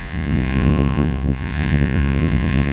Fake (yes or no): yes